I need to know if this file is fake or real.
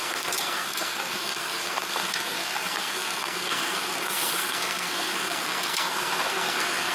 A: fake